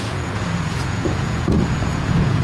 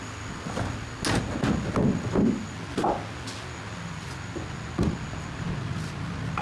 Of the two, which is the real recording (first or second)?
second